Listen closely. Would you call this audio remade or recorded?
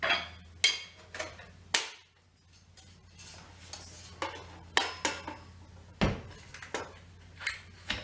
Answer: recorded